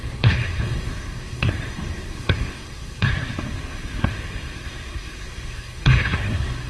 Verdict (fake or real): fake